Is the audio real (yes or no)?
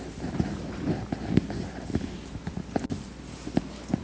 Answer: yes